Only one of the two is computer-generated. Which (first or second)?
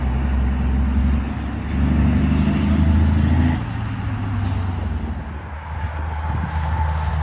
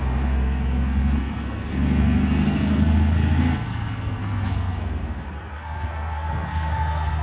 second